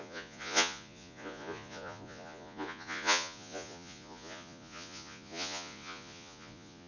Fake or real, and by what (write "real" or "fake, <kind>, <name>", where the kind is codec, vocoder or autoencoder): fake, vocoder, Vocos